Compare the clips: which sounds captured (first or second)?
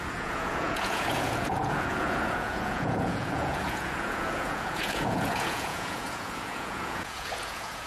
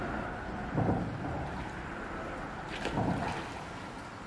second